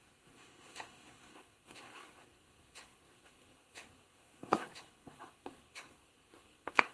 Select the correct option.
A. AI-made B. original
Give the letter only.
A